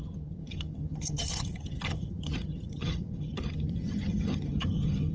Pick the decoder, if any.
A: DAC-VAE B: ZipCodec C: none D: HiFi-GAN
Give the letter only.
D